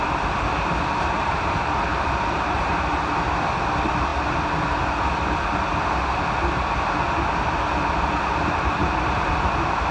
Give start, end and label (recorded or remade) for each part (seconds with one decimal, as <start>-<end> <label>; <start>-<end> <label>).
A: 0.0-1.9 recorded; 1.9-2.7 remade; 2.7-9.9 recorded